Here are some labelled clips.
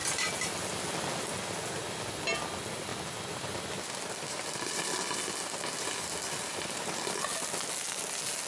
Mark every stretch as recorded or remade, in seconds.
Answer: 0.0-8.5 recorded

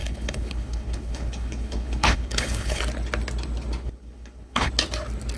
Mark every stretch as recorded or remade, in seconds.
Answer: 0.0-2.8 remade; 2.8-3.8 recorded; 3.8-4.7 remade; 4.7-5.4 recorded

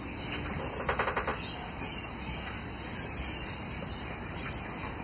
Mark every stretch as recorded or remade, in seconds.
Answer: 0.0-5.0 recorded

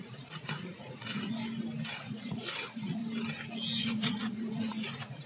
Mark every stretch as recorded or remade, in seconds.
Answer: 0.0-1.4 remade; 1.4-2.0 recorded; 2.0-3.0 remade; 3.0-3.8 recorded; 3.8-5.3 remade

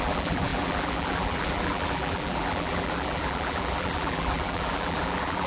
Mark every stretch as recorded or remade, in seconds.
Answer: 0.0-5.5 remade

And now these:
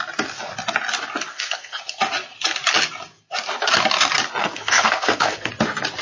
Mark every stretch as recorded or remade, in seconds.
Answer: 0.0-1.3 recorded; 1.3-1.8 remade; 1.8-4.4 recorded; 4.4-5.5 remade; 5.5-6.0 recorded